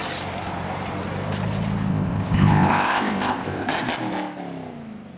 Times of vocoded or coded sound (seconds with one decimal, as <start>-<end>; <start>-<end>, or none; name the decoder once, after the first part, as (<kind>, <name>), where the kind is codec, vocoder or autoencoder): 1.9-3.7 (codec, ZipCodec)